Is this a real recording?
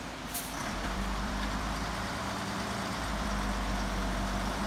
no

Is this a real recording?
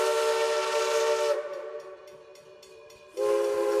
yes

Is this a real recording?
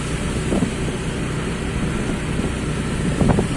yes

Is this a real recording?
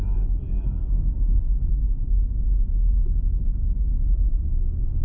yes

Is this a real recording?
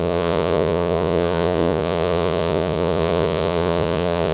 no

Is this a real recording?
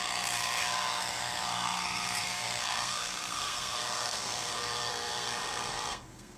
no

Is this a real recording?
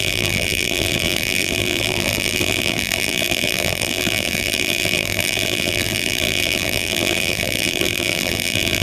no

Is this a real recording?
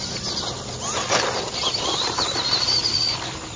yes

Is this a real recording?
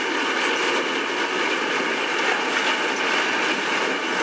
yes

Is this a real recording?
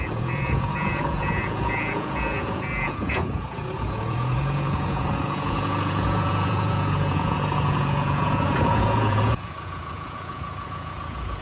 no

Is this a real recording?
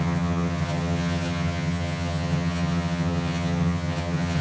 no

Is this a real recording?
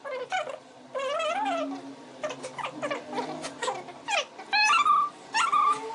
yes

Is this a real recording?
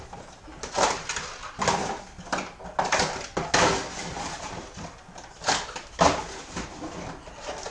yes